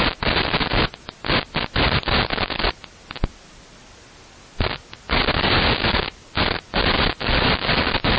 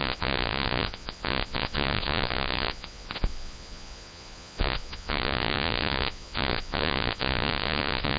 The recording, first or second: first